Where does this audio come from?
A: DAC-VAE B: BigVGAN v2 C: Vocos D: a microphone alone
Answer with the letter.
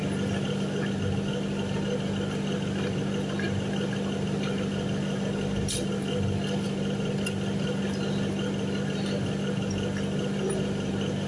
D